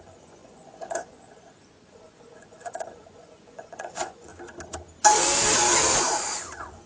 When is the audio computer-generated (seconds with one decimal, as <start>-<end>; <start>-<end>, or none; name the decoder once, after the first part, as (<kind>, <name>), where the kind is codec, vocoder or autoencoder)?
0.0-4.3 (vocoder, Vocos); 6.1-6.9

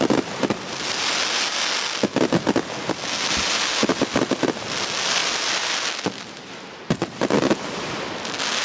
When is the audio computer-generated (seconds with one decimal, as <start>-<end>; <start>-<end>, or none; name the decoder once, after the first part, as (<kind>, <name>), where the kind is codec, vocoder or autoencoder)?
none

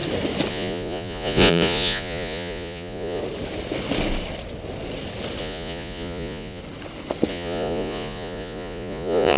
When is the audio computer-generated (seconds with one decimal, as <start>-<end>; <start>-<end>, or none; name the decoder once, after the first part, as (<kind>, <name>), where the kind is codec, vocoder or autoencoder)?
0.5-3.2 (vocoder, Vocos); 5.4-6.6; 7.3-9.4

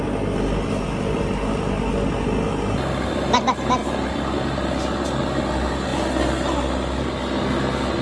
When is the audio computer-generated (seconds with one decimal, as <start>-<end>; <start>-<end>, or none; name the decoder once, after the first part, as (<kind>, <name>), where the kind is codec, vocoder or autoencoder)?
none

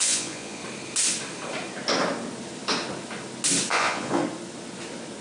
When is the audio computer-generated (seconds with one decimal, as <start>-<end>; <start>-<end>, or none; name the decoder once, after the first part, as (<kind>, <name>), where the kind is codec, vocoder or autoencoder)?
0.0-0.6 (vocoder, Vocos); 3.7-4.2

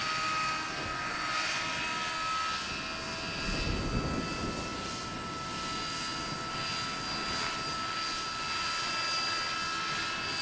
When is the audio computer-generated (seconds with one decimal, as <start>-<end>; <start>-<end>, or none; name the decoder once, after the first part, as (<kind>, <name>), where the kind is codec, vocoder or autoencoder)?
0.9-1.6 (vocoder, Vocos)